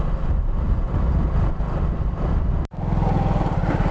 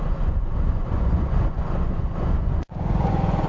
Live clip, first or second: first